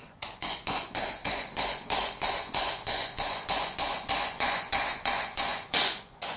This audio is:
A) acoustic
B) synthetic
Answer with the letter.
B